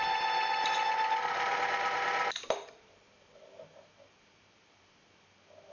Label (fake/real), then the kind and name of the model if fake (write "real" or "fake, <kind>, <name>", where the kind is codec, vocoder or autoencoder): real